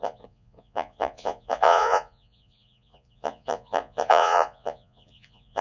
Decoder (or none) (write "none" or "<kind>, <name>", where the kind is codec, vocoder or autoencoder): vocoder, Vocos